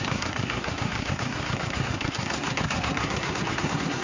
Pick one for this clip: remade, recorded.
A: remade